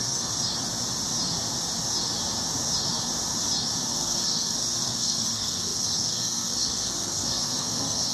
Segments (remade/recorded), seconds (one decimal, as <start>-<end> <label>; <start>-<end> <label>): 0.0-0.4 remade; 0.4-3.9 recorded; 3.9-8.1 remade